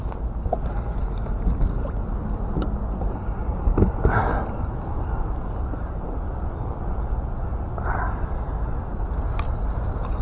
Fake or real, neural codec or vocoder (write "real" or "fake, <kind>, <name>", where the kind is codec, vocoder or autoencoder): real